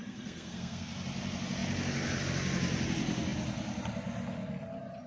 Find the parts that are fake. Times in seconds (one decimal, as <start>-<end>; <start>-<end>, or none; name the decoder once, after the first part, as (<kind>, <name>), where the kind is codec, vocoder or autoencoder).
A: 0.0-0.9 (codec, SNAC)